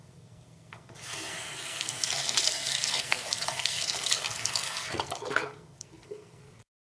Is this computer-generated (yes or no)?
yes